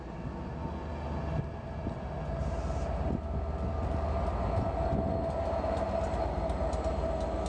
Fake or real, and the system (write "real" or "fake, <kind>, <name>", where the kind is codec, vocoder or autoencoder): real